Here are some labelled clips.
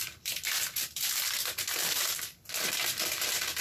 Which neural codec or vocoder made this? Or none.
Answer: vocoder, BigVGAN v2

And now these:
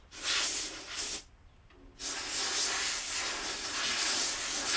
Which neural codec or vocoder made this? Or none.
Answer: none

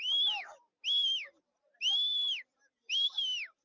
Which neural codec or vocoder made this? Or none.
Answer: none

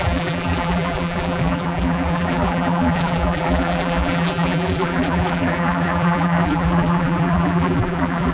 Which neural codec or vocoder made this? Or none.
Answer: vocoder, BigVGAN v2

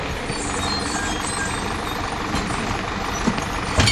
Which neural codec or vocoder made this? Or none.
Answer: none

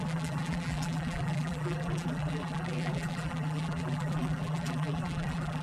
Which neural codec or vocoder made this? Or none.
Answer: vocoder, BigVGAN v2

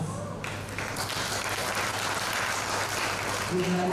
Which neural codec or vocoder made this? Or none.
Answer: none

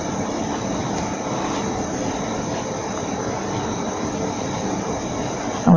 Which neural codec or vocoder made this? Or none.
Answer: none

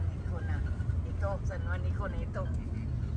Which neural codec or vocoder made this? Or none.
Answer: none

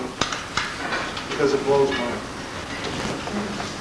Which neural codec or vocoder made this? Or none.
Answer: none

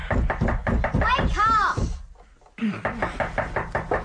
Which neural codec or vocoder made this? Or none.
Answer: none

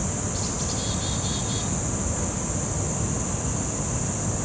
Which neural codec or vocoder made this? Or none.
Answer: none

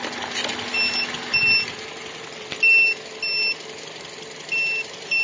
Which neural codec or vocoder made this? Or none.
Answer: none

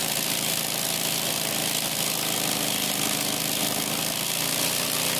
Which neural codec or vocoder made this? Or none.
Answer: none